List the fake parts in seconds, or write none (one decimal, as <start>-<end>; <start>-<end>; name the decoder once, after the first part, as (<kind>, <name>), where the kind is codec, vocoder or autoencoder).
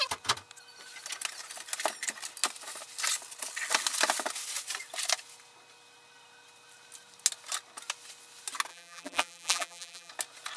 8.7-10.1 (vocoder, BigVGAN v2)